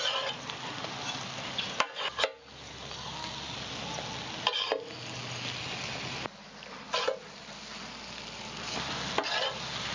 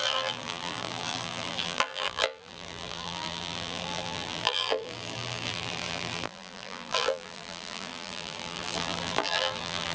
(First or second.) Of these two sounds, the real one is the first